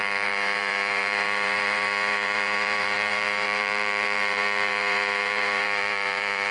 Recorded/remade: remade